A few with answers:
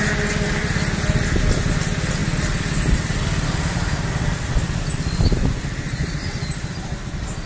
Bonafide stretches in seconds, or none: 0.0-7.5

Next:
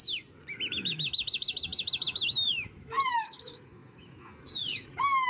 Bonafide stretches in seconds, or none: 0.0-0.7

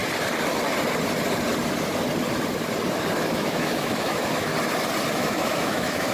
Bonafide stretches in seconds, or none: 0.0-3.1; 4.5-5.1

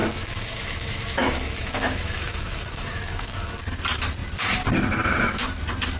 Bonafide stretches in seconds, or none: 3.6-6.0

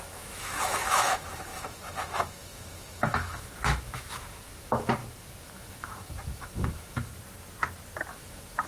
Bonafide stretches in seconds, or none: 7.1-8.1